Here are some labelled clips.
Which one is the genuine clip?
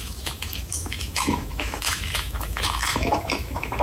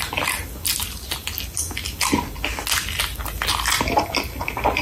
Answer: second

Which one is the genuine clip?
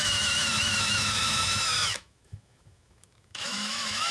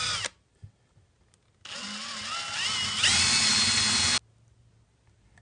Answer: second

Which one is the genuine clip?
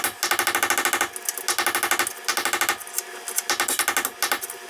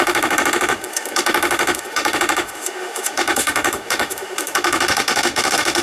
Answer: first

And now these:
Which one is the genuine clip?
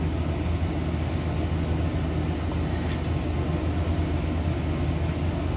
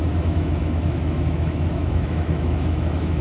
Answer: first